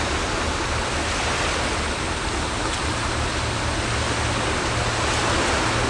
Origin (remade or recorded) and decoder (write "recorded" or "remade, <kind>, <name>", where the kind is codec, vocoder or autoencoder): recorded